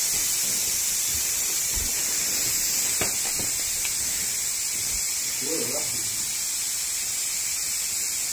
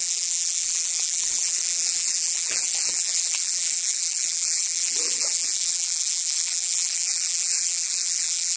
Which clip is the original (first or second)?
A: first